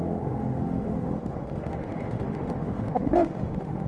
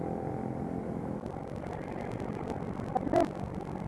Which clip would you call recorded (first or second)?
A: second